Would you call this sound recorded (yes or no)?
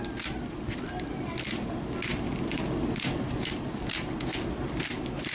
yes